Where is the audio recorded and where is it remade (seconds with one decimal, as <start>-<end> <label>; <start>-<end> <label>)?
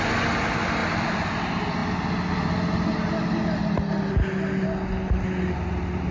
0.0-0.8 recorded; 0.8-1.3 remade; 1.3-6.1 recorded